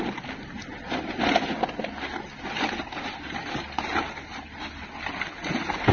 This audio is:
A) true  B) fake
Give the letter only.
A